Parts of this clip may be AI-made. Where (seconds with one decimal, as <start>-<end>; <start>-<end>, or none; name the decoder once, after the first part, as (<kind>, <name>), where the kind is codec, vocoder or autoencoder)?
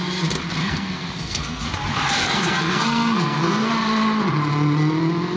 0.6-1.6 (codec, SNAC); 2.2-3.7